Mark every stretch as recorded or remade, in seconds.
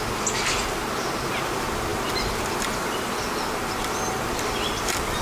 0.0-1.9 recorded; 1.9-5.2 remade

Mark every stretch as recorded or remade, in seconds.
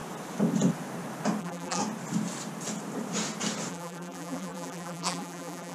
0.0-1.4 recorded; 1.4-1.8 remade; 1.8-3.7 recorded; 3.7-5.7 remade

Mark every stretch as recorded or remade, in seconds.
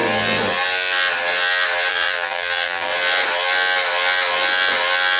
0.0-1.9 recorded; 1.9-2.9 remade; 2.9-5.2 recorded